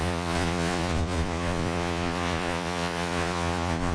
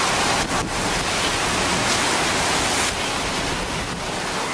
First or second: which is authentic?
second